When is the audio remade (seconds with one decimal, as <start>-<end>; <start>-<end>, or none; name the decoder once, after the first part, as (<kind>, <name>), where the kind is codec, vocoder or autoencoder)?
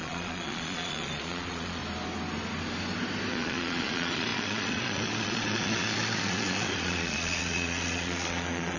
0.0-1.8 (vocoder, Vocos); 3.3-8.8